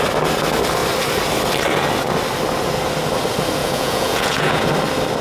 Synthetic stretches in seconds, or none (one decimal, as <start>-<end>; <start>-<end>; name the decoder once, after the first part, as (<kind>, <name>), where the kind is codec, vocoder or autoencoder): 3.6-4.7 (vocoder, Vocos)